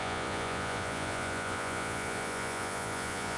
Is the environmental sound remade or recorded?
remade